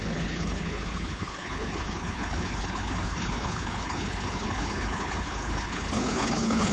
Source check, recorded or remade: remade